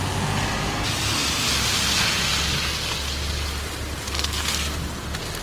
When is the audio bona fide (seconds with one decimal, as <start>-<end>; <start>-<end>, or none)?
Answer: 0.0-4.1; 4.8-5.4